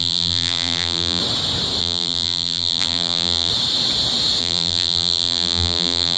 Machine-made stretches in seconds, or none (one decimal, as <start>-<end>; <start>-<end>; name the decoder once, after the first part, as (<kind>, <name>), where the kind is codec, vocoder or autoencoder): 0.0-1.2 (vocoder, BigVGAN v2); 1.8-3.5; 4.4-6.2